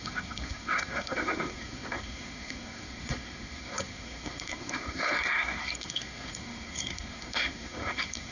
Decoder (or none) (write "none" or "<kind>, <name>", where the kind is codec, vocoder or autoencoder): codec, SNAC